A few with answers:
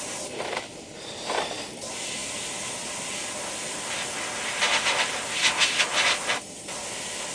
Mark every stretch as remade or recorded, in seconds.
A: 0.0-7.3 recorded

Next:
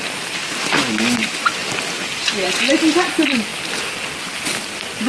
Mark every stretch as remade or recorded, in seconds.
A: 0.0-5.1 recorded

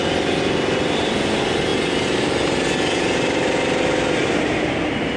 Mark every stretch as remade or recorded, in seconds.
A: 0.0-5.2 recorded

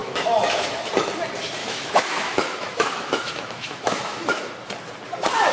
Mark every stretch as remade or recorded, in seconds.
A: 0.0-0.9 remade; 0.9-1.6 recorded; 1.6-4.5 remade; 4.5-5.5 recorded

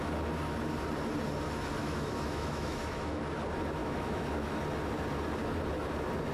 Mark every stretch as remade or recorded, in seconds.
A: 0.0-1.8 recorded; 1.8-3.2 remade; 3.2-3.8 recorded; 3.8-4.6 remade; 4.6-6.3 recorded

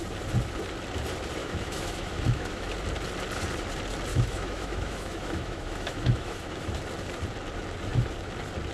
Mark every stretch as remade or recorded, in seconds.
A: 0.0-1.4 recorded; 1.4-2.7 remade; 2.7-4.1 recorded; 4.1-6.8 remade; 6.8-8.7 recorded

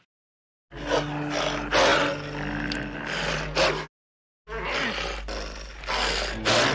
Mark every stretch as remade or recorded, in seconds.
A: 0.0-6.7 recorded